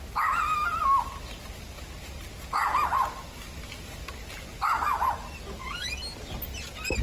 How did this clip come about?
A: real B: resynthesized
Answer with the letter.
A